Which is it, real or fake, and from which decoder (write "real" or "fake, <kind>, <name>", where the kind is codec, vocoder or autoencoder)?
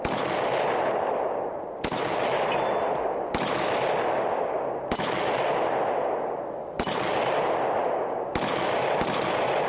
real